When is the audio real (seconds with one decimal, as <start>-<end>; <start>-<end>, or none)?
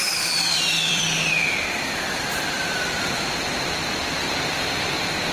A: 1.0-4.2